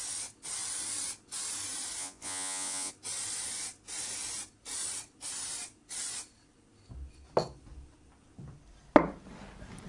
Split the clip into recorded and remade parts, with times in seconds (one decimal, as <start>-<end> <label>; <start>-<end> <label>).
0.0-2.0 recorded; 2.0-2.9 remade; 2.9-9.9 recorded